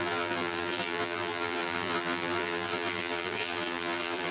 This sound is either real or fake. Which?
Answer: fake